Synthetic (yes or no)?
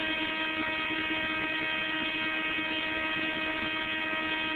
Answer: no